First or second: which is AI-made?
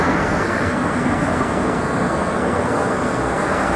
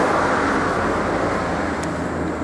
first